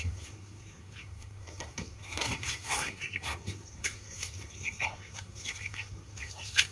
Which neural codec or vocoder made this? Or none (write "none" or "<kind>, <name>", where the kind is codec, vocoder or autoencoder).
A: codec, SNAC